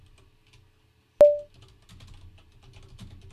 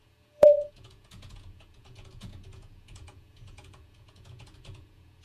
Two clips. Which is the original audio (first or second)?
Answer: first